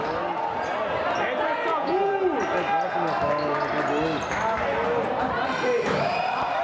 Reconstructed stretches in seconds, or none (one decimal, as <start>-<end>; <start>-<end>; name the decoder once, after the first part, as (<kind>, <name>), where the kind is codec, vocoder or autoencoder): 1.7-2.2 (vocoder, Vocos)